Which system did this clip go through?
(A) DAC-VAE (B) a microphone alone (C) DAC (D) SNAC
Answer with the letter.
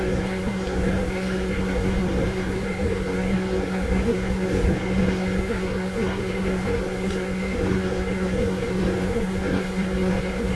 D